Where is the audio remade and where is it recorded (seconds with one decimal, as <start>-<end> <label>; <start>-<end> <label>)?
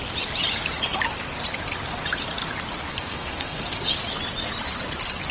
0.0-2.9 recorded; 2.9-3.6 remade; 3.6-5.3 recorded